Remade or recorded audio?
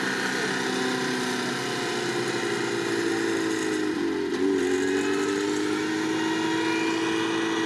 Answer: recorded